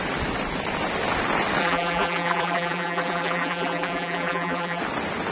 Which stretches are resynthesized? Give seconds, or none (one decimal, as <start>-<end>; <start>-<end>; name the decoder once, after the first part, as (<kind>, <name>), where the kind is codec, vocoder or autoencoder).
1.6-4.8 (vocoder, BigVGAN v2)